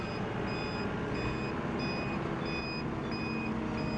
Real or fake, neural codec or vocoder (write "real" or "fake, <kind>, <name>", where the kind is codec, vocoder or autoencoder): real